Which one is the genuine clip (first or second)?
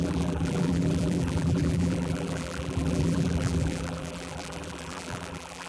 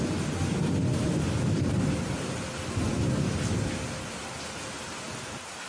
second